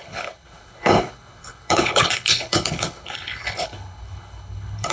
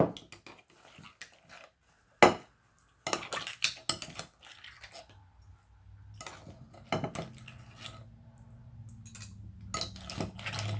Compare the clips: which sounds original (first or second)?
second